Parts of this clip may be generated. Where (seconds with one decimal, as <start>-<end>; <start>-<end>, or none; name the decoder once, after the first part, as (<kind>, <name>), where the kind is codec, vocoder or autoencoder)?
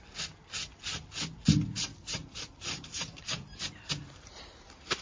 1.9-5.0 (vocoder, BigVGAN v2)